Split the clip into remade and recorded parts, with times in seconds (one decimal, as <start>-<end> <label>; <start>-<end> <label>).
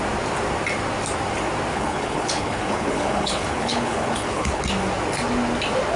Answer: 0.0-1.7 recorded; 1.7-4.6 remade; 4.6-6.0 recorded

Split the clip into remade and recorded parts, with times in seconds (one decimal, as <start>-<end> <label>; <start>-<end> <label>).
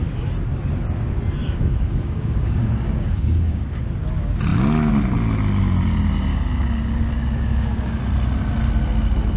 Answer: 0.0-1.4 recorded; 1.4-3.8 remade; 3.8-6.3 recorded; 6.3-8.0 remade; 8.0-9.4 recorded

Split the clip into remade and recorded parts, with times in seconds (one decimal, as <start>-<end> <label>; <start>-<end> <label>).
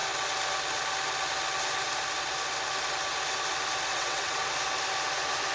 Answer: 0.0-3.9 recorded; 3.9-4.5 remade; 4.5-5.5 recorded